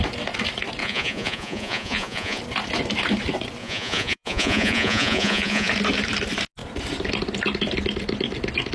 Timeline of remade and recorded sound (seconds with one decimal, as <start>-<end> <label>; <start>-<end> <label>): 0.0-0.8 recorded; 0.8-2.4 remade; 2.4-3.6 recorded; 3.6-5.7 remade; 5.7-8.7 recorded

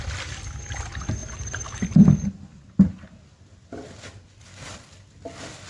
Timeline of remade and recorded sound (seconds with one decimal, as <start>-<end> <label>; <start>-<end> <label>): 0.0-5.7 recorded

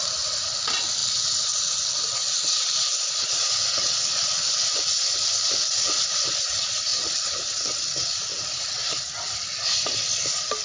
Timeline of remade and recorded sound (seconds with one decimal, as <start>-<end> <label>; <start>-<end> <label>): 0.0-6.9 recorded; 6.9-9.6 remade; 9.6-10.6 recorded

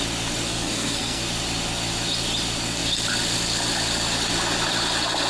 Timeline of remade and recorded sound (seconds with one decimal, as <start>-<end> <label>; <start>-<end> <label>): 0.0-0.5 recorded; 0.5-1.2 remade; 1.2-5.3 recorded